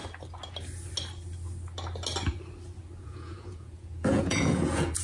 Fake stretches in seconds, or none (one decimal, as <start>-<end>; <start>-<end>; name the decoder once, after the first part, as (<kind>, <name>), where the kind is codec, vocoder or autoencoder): 3.0-5.0 (vocoder, Vocos)